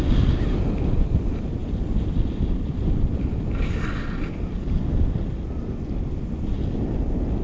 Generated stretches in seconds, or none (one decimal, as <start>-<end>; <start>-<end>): none